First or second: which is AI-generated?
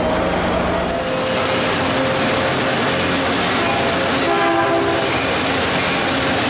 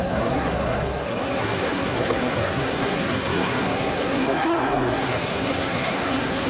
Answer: second